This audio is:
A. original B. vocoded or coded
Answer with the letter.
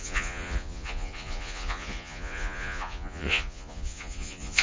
B